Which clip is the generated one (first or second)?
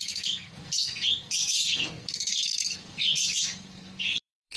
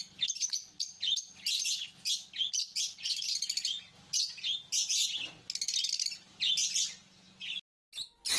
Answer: first